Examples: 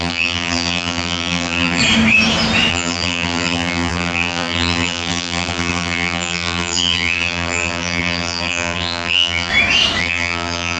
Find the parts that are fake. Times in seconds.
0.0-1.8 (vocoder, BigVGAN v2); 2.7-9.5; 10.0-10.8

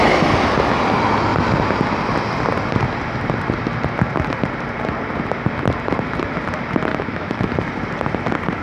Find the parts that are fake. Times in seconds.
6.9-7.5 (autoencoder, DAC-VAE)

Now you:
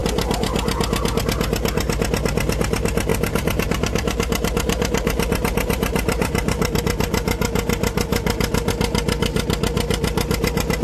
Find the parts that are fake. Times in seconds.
3.1-6.8 (vocoder, BigVGAN v2)

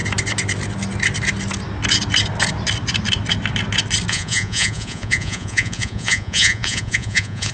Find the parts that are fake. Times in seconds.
4.1-7.5 (vocoder, Vocos)

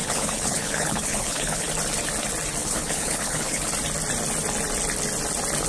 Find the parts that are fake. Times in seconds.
0.0-1.7 (codec, HILCodec); 2.6-3.7

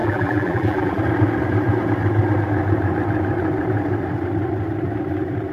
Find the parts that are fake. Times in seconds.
0.0-1.0 (vocoder, BigVGAN v2)

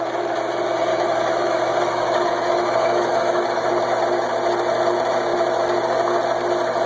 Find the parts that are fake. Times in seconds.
0.9-3.7 (autoencoder, DAC-VAE)